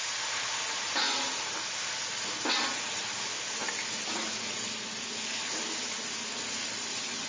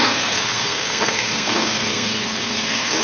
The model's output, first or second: second